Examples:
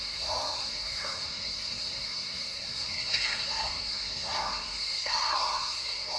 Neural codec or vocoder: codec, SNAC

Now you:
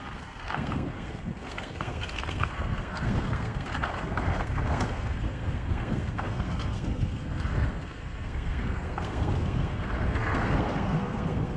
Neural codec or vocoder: codec, SNAC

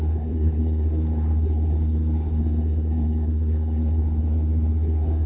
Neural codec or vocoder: codec, SNAC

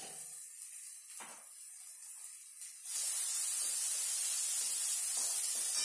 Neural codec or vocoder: none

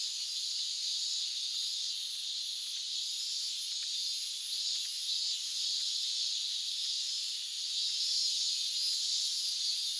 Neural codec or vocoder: none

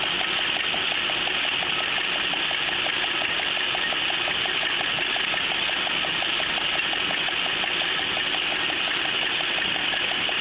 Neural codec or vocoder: none